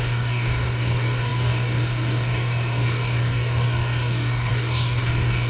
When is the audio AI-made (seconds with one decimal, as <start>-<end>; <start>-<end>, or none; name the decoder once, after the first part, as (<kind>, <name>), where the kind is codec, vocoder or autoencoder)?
0.0-5.5 (codec, DAC)